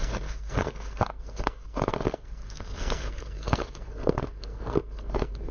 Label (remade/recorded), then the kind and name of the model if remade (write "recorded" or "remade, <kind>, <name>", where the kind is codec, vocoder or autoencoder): remade, codec, SNAC